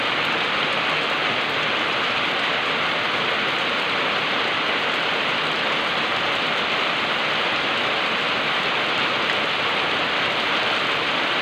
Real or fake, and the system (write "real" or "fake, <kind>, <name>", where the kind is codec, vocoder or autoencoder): fake, vocoder, BigVGAN v2